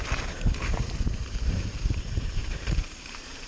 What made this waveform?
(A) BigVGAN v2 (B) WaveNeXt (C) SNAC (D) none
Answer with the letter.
A